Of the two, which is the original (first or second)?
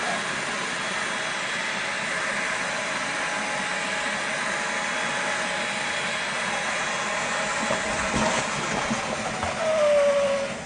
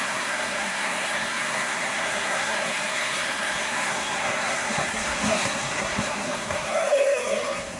first